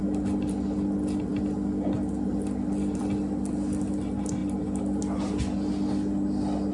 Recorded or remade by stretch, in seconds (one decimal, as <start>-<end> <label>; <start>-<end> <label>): 0.0-6.7 recorded